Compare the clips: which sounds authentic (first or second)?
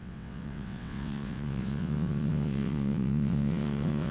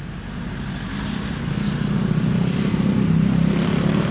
second